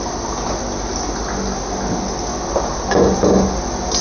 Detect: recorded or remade recorded